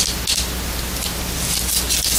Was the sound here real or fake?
real